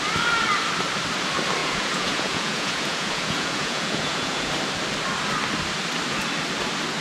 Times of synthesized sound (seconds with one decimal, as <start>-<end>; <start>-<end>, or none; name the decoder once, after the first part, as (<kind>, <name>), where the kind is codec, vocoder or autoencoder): 1.6-4.5 (vocoder, Vocos)